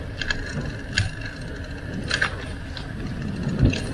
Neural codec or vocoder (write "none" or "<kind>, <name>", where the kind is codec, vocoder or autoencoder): none